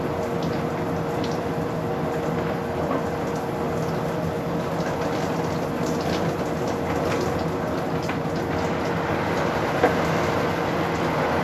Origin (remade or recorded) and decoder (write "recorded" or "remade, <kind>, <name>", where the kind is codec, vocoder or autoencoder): recorded